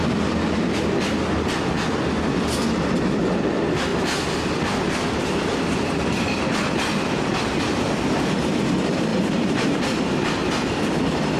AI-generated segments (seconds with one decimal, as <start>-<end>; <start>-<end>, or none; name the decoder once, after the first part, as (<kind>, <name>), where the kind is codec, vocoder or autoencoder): 9.1-10.0 (vocoder, BigVGAN v2); 10.4-11.0